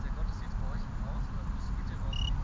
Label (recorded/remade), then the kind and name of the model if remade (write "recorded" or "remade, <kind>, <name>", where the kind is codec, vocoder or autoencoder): recorded